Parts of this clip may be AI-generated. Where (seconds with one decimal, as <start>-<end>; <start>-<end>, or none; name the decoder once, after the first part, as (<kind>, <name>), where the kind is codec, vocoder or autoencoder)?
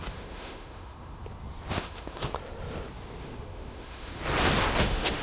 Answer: 0.0-1.2 (autoencoder, DAC-VAE); 1.7-2.3; 3.2-4.1; 4.8-5.2